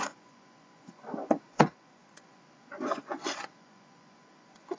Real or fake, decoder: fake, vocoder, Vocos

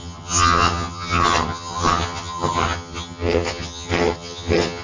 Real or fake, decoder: fake, vocoder, HiFi-GAN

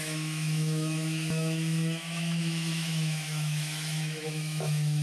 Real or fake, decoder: fake, autoencoder, DAC-VAE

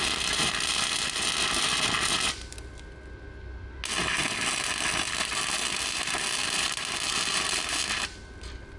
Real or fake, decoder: real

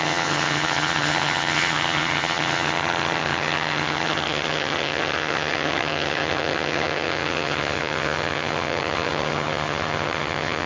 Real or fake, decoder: fake, vocoder, HiFi-GAN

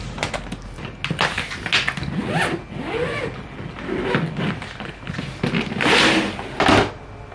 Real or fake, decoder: real